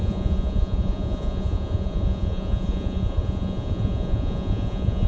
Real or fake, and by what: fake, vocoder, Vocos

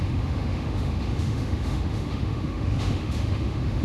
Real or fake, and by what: fake, autoencoder, DAC-VAE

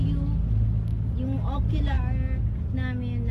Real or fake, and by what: real